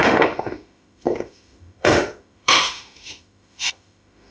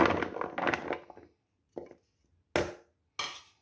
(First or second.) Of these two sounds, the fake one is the first